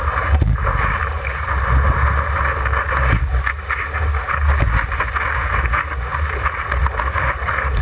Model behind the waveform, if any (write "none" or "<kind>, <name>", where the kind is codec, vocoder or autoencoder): none